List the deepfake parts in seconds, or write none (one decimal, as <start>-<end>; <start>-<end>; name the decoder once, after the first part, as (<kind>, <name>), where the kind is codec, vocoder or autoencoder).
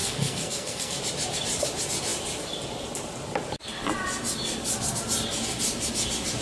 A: 0.0-1.0 (codec, SNAC)